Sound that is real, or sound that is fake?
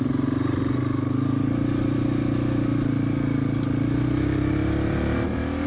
real